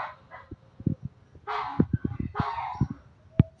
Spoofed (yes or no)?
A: no